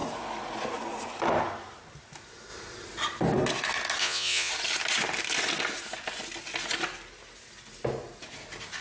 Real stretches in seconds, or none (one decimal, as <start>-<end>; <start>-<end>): 0.0-4.0; 4.5-8.8